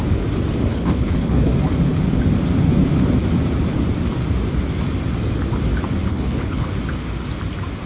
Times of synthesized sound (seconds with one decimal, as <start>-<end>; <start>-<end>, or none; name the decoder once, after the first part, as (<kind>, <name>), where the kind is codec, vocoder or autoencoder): 0.7-1.5 (codec, HILCodec); 6.1-6.7